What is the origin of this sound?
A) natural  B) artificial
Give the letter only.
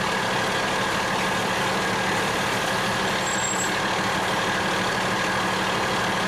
A